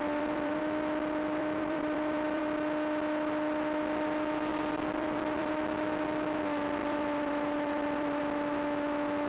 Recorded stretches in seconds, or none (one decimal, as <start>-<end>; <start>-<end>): 0.6-1.4; 2.4-4.5; 5.5-6.8; 8.2-9.3